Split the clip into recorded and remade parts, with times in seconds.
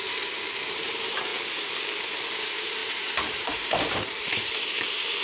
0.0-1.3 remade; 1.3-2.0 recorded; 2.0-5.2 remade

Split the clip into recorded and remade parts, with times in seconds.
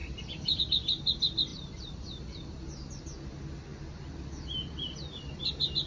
0.0-0.6 remade; 0.6-1.5 recorded; 1.5-2.6 remade; 2.6-5.9 recorded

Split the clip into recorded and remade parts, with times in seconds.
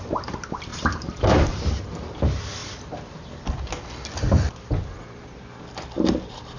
0.0-0.7 recorded; 0.7-1.7 remade; 1.7-6.6 recorded